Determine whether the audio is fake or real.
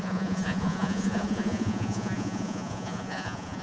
fake